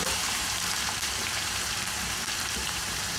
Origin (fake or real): fake